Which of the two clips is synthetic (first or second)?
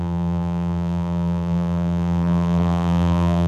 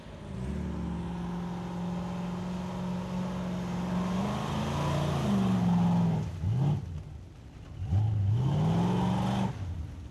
first